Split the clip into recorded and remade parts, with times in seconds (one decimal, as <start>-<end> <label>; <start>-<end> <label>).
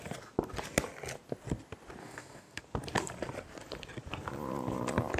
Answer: 0.0-2.0 recorded; 2.0-2.6 remade; 2.6-5.2 recorded